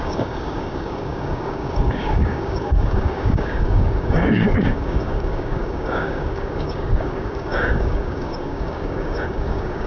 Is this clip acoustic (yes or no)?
no